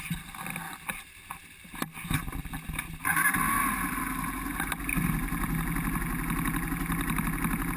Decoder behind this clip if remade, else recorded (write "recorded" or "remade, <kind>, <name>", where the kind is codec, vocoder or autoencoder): recorded